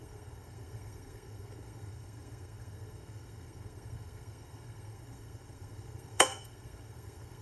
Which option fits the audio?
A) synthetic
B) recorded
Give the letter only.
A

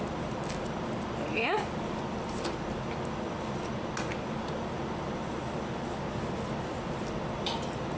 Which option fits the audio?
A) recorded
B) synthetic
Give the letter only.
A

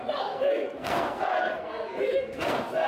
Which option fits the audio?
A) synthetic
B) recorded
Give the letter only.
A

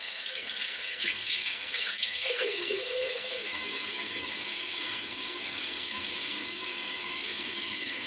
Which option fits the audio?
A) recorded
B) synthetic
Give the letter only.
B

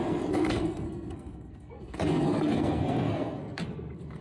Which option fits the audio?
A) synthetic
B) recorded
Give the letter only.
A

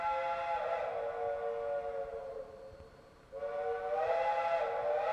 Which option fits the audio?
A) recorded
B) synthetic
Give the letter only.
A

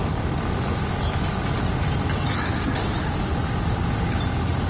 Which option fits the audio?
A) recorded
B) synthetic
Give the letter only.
A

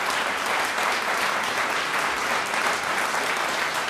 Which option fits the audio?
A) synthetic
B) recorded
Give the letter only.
B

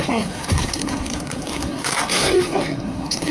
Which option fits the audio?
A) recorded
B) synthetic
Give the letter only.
B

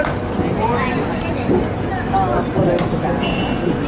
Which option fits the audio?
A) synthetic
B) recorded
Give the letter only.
B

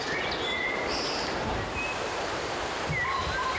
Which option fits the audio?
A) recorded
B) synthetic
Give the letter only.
A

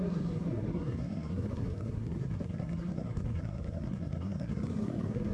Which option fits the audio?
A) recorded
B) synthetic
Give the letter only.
B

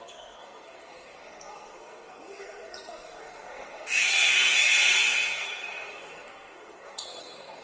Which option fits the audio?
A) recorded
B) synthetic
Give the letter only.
B